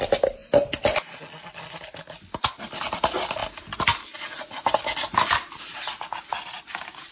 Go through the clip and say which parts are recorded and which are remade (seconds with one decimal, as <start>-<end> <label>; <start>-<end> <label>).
0.0-7.1 recorded